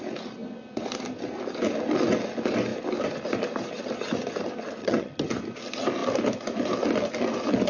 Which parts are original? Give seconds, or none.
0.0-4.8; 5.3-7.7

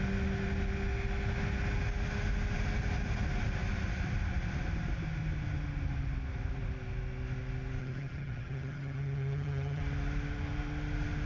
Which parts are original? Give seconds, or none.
0.0-7.8; 9.8-11.3

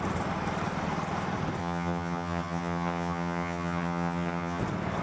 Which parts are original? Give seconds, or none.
0.0-1.6; 4.6-5.0

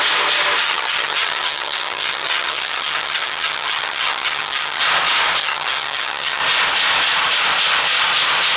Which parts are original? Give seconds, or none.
0.0-0.6; 4.8-5.4; 6.4-8.6